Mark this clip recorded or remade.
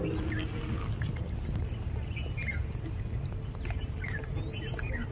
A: recorded